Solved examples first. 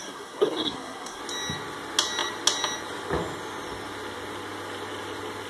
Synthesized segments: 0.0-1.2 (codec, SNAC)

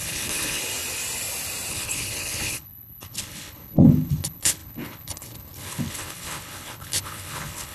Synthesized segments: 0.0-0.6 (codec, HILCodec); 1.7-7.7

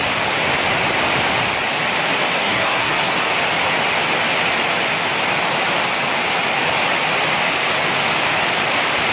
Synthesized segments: 2.4-3.1 (codec, SNAC)

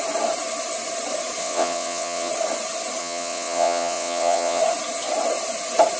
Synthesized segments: 1.4-2.3 (vocoder, WaveNeXt); 3.0-4.6